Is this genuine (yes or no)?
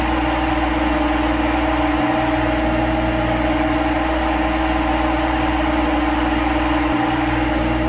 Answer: yes